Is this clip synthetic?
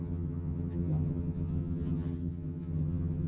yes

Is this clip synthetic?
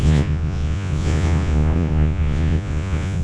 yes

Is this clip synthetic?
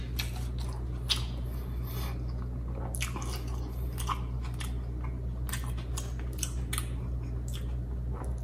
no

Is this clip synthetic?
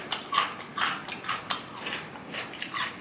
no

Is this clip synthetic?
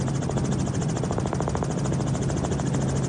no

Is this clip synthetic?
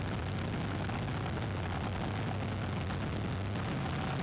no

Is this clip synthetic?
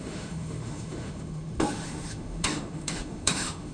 yes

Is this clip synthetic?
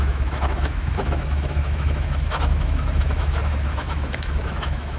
yes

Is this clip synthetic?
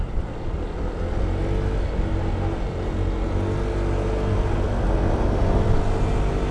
no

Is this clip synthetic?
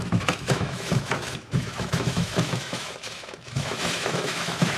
yes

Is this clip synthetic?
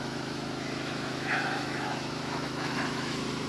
yes